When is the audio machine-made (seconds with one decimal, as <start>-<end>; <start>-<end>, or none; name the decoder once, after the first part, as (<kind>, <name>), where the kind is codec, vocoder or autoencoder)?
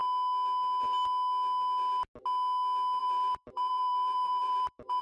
3.0-5.0 (vocoder, BigVGAN v2)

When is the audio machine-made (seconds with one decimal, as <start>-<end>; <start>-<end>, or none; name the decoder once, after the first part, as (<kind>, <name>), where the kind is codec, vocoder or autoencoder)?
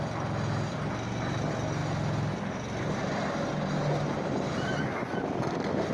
none